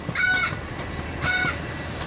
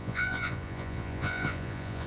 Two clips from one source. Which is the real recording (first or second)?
first